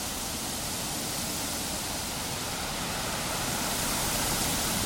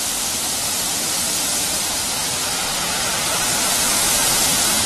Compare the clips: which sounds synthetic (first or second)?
second